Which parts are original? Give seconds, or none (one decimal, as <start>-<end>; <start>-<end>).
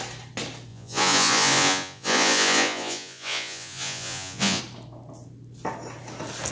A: 0.0-0.7; 4.6-6.5